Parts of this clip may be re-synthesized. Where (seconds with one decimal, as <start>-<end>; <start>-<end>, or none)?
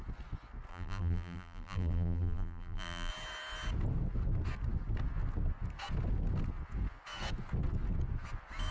0.7-3.1